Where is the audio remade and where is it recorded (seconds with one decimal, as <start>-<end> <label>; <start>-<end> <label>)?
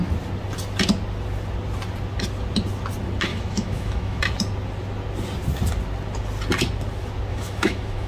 0.0-3.3 recorded; 3.3-4.2 remade; 4.2-7.3 recorded; 7.3-8.1 remade